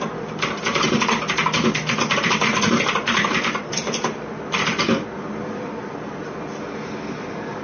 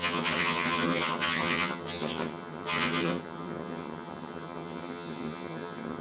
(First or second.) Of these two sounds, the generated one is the second